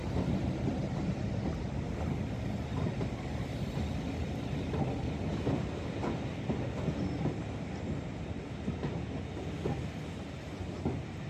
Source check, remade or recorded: recorded